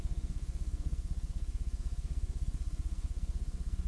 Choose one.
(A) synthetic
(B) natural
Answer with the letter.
A